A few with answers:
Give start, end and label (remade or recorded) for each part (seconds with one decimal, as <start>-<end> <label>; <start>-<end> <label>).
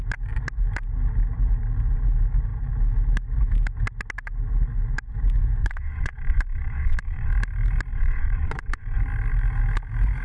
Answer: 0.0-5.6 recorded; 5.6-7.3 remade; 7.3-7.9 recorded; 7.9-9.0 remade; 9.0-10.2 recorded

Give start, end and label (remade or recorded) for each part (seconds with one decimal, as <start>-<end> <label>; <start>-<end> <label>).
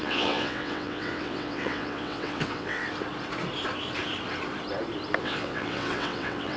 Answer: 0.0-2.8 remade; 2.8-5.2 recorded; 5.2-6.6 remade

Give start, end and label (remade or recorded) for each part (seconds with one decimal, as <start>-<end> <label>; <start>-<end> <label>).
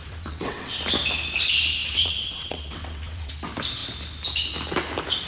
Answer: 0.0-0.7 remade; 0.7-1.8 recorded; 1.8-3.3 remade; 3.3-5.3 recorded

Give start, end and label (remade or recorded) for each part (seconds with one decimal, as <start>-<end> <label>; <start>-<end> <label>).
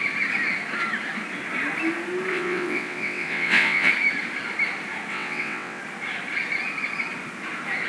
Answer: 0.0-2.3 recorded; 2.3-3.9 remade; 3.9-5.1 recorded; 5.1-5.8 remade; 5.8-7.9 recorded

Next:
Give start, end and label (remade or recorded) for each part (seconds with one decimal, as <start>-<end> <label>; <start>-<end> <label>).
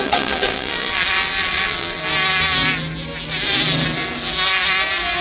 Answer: 0.0-2.0 remade; 2.0-5.2 recorded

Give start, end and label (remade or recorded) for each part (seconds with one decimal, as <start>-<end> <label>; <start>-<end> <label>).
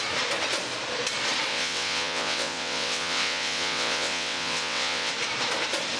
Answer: 0.0-1.5 recorded; 1.5-5.1 remade; 5.1-6.0 recorded